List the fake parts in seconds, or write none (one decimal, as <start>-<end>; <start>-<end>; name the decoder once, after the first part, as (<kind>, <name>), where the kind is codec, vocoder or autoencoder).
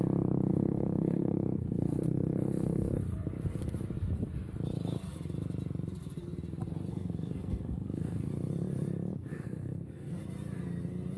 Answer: 0.5-3.0 (codec, SNAC); 6.9-8.3; 9.1-10.2